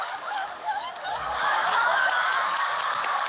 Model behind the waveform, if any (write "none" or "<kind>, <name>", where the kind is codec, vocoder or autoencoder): codec, DAC